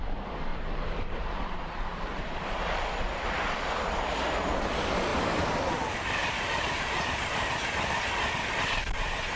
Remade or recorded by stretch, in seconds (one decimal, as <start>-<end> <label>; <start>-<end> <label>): 0.0-0.5 recorded; 0.5-2.6 remade; 2.6-5.1 recorded; 5.1-8.5 remade; 8.5-9.4 recorded